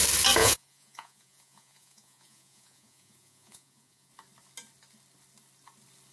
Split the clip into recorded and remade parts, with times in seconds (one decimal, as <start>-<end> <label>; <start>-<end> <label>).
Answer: 0.0-0.4 recorded; 0.4-4.1 remade; 4.1-6.1 recorded